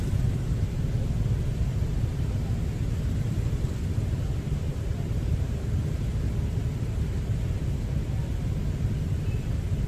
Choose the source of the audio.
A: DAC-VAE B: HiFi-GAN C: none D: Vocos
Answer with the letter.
C